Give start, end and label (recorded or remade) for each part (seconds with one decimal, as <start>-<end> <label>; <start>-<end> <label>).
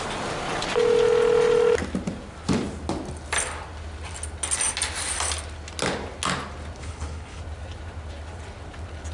0.0-6.8 recorded; 6.8-7.4 remade; 7.4-9.1 recorded